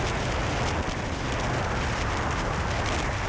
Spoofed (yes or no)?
no